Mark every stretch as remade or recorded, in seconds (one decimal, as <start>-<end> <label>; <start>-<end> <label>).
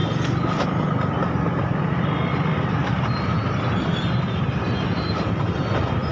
0.0-6.1 recorded